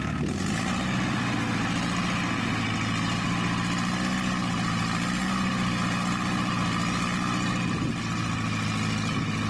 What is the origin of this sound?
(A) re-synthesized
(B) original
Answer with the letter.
B